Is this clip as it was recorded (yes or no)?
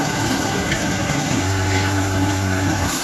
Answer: no